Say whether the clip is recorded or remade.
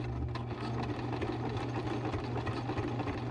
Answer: recorded